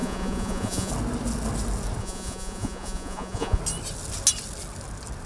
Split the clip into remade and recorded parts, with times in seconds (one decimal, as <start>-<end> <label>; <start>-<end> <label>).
0.0-0.9 remade; 0.9-2.0 recorded; 2.0-3.6 remade; 3.6-5.3 recorded